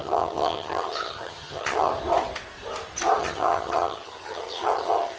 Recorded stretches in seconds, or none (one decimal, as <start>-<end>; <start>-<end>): 1.9-3.2